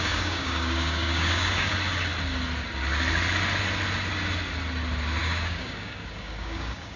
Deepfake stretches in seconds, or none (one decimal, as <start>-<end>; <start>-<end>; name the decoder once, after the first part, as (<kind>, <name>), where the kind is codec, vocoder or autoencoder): 0.0-1.7 (codec, DAC); 5.2-7.0